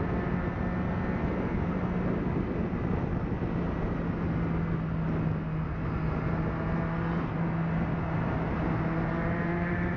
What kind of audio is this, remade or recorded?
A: recorded